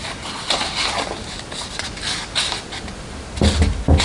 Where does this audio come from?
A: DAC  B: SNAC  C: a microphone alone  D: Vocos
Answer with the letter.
C